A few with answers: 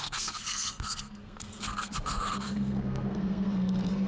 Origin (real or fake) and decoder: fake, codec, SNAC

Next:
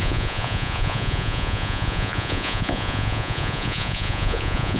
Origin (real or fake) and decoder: fake, vocoder, Vocos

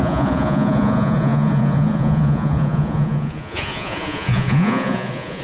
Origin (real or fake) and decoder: fake, vocoder, Vocos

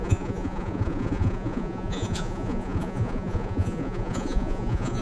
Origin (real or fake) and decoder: fake, vocoder, Vocos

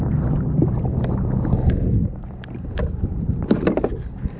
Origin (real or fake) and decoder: real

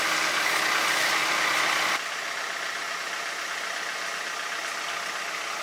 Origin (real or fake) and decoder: real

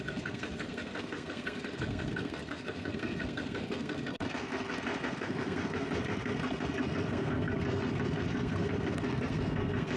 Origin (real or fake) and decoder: fake, codec, SNAC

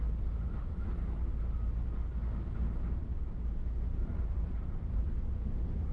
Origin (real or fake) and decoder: real